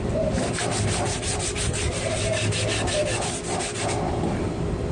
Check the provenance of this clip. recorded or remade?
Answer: recorded